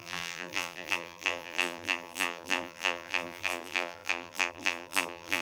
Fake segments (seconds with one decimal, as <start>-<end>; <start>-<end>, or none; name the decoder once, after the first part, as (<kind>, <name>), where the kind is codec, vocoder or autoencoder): 0.0-5.4 (vocoder, BigVGAN v2)